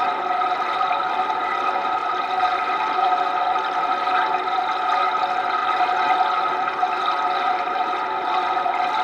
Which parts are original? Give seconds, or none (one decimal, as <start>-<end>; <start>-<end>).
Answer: 0.0-9.0